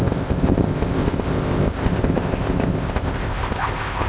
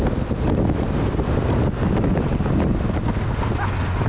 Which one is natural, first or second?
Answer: second